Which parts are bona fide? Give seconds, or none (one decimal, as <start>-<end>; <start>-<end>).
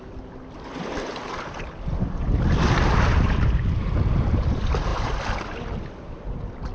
none